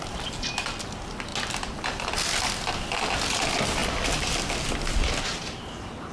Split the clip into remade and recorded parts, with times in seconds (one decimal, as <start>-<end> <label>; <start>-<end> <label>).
0.0-6.1 recorded